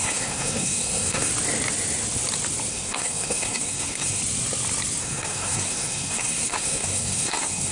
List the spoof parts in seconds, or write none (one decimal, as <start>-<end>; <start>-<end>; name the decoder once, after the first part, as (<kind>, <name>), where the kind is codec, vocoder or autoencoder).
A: 0.0-1.3 (codec, SNAC); 2.7-4.2; 5.0-7.7